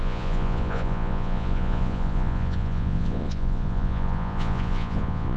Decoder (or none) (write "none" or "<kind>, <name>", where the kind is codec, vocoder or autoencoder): vocoder, Vocos